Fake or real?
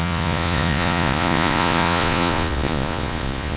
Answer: fake